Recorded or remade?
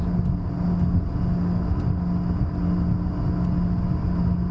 recorded